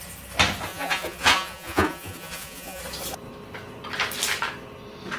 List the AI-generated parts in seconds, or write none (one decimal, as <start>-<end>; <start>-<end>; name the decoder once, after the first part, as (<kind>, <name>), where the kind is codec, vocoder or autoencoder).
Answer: 0.7-2.8 (vocoder, Vocos)

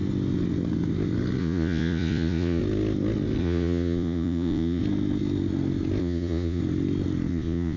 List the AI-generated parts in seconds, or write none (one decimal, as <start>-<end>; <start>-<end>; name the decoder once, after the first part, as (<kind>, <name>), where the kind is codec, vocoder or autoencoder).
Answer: 1.4-2.6 (vocoder, Vocos); 3.4-4.8; 6.0-6.6; 7.3-7.8

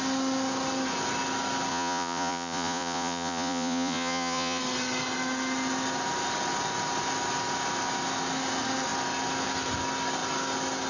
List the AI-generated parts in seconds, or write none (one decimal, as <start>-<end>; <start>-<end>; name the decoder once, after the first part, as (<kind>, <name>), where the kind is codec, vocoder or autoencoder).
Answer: 1.7-4.6 (vocoder, Vocos)